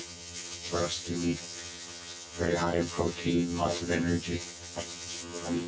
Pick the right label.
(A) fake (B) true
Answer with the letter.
A